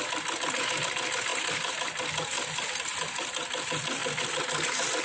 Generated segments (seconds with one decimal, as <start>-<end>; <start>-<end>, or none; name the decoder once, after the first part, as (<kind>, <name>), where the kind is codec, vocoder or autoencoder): none